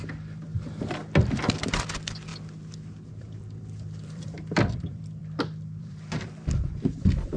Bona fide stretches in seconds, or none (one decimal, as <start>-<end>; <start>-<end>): 0.5-1.5; 2.3-3.1; 5.2-5.8